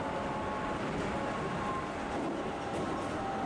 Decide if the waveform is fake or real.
real